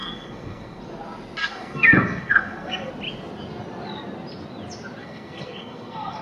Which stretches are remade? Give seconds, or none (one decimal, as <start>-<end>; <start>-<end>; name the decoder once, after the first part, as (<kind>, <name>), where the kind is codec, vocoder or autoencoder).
0.0-0.8 (codec, SNAC); 1.4-2.9; 5.0-6.2